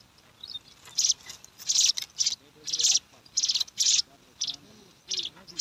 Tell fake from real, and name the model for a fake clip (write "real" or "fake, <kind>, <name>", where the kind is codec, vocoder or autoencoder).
real